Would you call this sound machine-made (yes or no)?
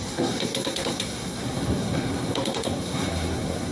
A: yes